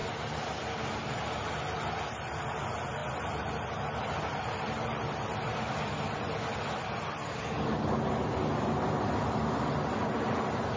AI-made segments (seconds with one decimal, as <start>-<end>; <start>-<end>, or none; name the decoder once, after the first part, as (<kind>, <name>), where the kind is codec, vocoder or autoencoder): none